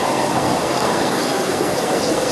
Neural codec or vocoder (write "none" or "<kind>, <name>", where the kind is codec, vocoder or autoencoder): codec, SNAC